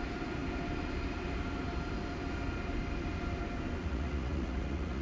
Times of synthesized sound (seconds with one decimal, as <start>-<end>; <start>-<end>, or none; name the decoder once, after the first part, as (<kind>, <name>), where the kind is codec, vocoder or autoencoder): 3.8-5.0 (vocoder, Vocos)